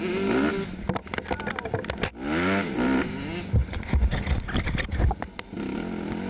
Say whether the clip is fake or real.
real